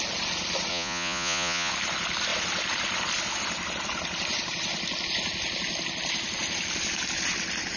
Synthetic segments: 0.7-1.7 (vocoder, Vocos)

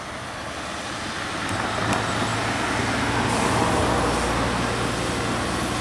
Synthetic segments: none

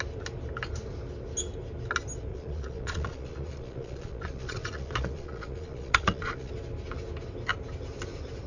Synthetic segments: 2.3-6.5 (vocoder, Vocos)